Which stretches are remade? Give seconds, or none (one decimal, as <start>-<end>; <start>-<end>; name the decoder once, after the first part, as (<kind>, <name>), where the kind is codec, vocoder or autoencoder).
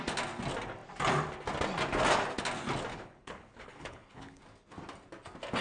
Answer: 2.9-4.4 (codec, HILCodec)